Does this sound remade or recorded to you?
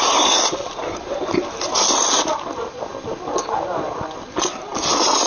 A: recorded